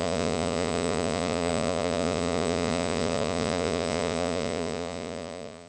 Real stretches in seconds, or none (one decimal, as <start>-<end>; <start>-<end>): none